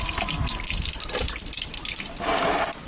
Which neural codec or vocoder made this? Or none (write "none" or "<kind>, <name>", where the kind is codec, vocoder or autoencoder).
none